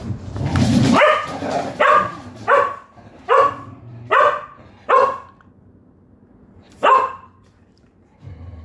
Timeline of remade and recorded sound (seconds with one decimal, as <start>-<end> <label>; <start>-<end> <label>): 0.0-3.9 remade; 3.9-6.5 recorded; 6.5-8.6 remade